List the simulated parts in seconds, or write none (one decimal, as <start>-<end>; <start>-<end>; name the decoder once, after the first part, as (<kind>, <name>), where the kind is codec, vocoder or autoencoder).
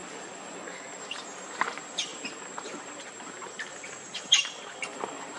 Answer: 0.9-5.4 (vocoder, BigVGAN v2)